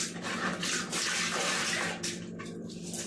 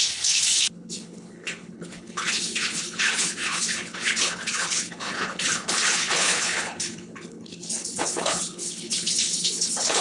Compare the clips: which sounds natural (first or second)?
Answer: first